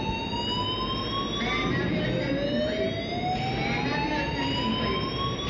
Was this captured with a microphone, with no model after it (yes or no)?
yes